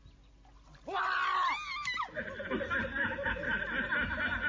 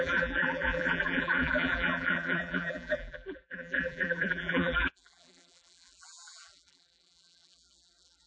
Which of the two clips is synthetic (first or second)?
second